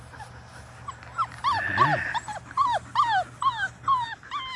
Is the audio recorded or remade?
recorded